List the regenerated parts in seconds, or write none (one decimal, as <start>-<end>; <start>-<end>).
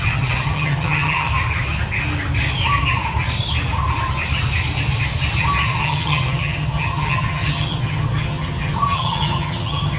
0.0-1.3; 5.8-10.0